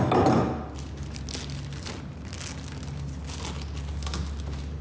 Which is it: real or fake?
real